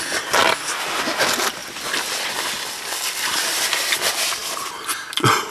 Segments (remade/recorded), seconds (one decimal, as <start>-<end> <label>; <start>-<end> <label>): 0.0-5.5 recorded